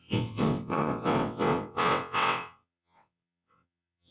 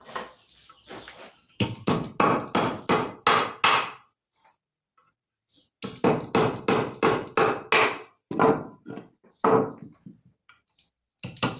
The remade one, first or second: first